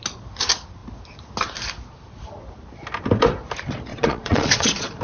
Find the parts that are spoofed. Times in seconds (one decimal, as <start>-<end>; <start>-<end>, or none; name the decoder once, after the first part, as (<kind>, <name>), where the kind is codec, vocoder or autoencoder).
3.9-5.0 (vocoder, Vocos)